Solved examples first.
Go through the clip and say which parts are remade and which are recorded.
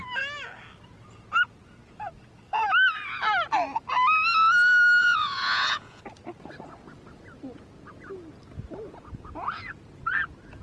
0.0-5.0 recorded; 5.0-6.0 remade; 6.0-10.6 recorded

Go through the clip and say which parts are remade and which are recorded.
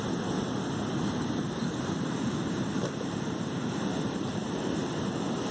0.0-1.6 recorded; 1.6-4.9 remade; 4.9-5.5 recorded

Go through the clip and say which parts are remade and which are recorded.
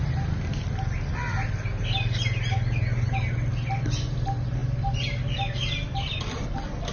0.0-6.9 recorded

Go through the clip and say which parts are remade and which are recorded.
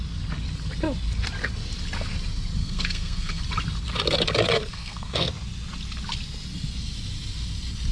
0.0-2.6 recorded; 2.6-3.4 remade; 3.4-4.7 recorded; 4.7-5.3 remade; 5.3-7.9 recorded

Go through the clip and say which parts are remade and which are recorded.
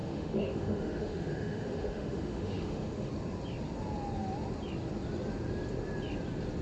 0.0-3.1 remade; 3.1-6.6 recorded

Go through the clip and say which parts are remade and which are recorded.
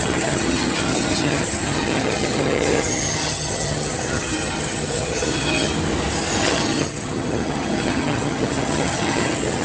0.0-5.7 remade; 5.7-6.4 recorded; 6.4-9.6 remade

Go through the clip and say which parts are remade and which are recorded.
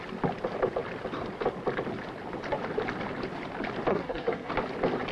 0.0-3.9 recorded; 3.9-4.5 remade; 4.5-5.1 recorded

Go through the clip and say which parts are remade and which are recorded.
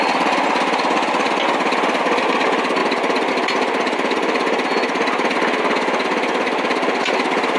0.0-7.6 recorded